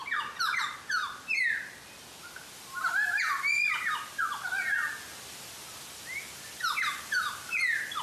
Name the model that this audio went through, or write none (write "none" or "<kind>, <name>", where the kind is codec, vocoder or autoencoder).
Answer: none